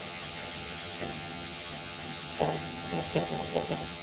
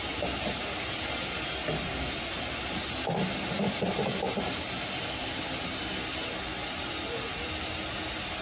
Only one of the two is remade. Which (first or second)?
first